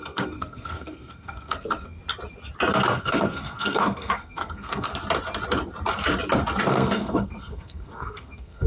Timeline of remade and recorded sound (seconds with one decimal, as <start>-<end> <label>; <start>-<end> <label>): 0.0-2.0 remade; 2.0-2.9 recorded; 2.9-4.9 remade; 4.9-6.7 recorded; 6.7-8.7 remade